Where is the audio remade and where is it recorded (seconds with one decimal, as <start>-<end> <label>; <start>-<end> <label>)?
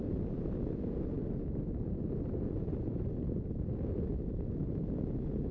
0.0-5.5 recorded